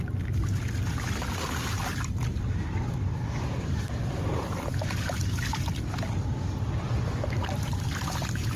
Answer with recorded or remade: recorded